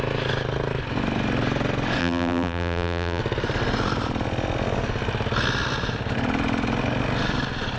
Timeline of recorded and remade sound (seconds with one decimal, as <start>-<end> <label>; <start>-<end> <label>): 0.0-2.0 recorded; 2.0-3.2 remade; 3.2-7.8 recorded